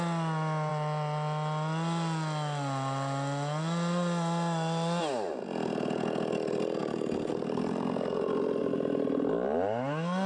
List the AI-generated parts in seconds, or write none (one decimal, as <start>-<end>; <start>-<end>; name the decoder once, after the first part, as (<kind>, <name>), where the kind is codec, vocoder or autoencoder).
none